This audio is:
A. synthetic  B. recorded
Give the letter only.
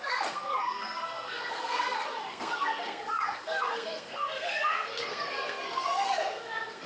A